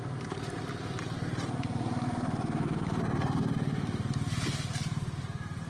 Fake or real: real